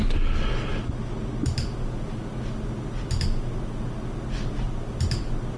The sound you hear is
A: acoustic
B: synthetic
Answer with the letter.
A